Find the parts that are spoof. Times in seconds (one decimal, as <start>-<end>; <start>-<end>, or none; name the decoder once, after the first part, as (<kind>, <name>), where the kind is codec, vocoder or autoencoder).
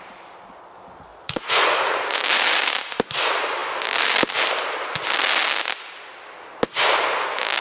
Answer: 1.1-2.2 (vocoder, Vocos)